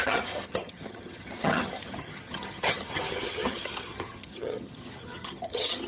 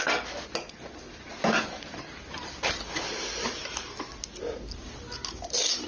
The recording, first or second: second